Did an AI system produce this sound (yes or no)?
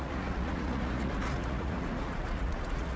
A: yes